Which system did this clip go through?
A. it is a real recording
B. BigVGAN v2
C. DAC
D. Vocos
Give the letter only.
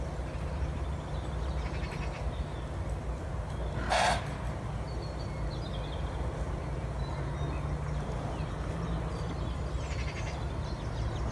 A